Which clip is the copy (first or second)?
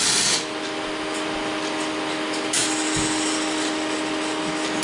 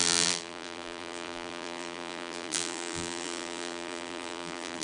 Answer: second